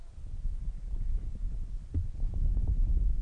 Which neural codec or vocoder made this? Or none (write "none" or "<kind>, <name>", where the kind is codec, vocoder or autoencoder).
none